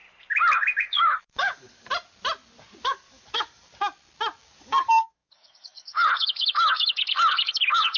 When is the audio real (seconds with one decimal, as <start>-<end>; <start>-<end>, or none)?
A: 0.0-0.8; 1.9-2.8; 3.7-4.4